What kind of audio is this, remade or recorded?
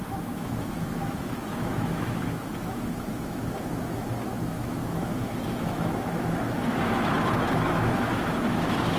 remade